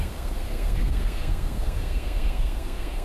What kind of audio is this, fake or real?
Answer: fake